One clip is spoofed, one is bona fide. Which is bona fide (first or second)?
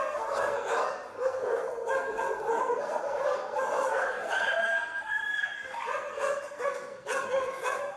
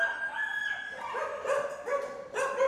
second